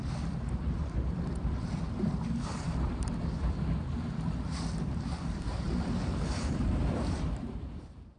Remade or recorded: remade